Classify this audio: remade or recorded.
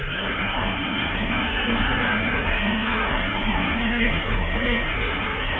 remade